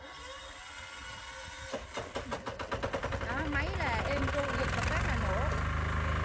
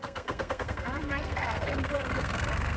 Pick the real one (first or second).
first